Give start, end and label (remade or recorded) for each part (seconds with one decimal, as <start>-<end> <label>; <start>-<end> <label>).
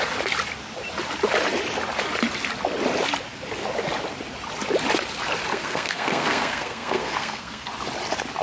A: 0.0-5.5 recorded; 5.5-7.7 remade; 7.7-8.4 recorded